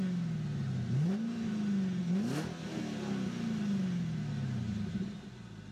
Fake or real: real